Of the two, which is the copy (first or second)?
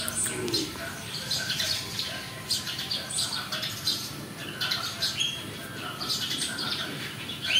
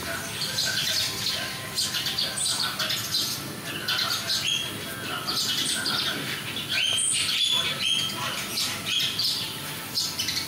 first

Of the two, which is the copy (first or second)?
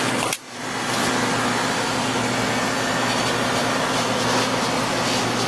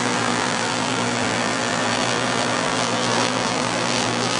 second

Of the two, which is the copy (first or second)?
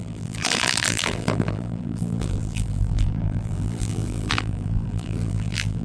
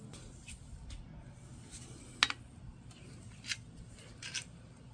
first